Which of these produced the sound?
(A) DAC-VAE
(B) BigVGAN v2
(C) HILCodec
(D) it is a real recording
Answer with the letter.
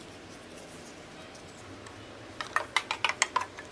D